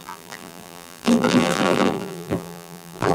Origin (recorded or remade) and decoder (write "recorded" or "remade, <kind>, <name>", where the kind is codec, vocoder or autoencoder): remade, vocoder, BigVGAN v2